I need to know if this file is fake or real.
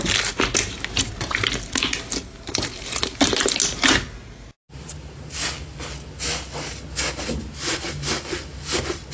real